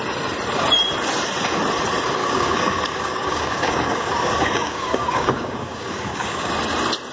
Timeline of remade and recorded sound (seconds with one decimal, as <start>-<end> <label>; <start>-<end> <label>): 0.0-2.2 recorded; 2.2-6.5 remade; 6.5-7.1 recorded